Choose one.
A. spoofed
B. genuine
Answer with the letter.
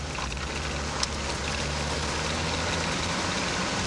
B